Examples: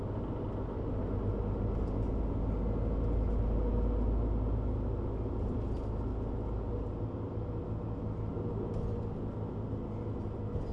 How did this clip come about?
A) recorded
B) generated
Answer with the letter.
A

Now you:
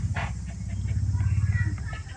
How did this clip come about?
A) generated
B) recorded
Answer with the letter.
B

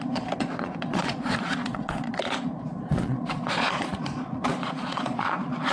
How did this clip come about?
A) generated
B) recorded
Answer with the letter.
A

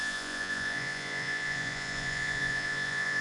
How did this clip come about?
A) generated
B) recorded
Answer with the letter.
A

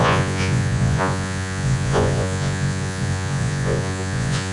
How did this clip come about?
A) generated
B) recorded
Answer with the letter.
A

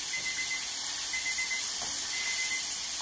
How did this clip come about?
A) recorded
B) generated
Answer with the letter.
A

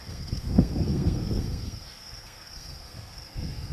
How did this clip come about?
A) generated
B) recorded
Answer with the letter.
A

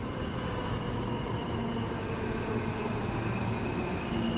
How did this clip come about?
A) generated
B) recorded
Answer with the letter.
B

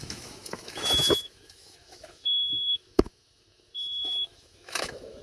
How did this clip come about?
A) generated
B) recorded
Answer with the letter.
A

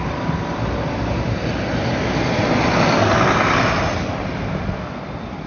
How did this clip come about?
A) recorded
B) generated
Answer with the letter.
A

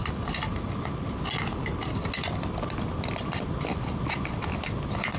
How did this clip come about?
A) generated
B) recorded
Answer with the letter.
B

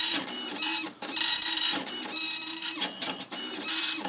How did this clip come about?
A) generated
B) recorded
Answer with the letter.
A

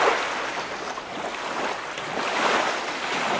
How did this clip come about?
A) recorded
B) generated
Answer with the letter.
A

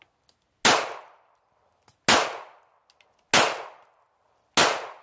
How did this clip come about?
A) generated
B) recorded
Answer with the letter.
B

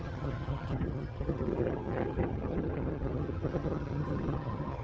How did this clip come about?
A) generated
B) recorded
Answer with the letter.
A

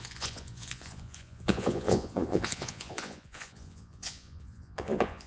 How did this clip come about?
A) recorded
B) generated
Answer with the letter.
B